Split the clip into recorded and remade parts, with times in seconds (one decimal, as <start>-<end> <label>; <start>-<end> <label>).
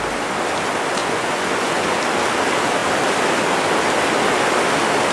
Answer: 0.0-1.0 recorded; 1.0-2.0 remade; 2.0-5.1 recorded